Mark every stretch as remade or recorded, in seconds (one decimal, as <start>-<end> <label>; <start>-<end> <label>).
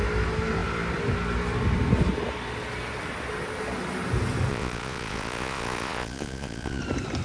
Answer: 0.0-4.5 recorded; 4.5-6.8 remade; 6.8-7.2 recorded